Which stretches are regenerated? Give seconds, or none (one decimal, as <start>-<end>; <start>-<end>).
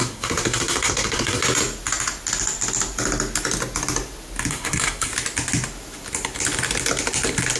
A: 0.0-1.4; 4.5-5.1